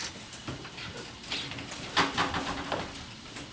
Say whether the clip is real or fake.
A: real